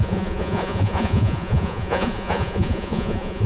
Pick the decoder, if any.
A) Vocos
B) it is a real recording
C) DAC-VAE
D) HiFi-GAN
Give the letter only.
A